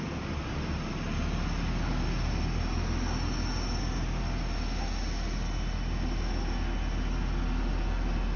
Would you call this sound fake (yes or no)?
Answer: no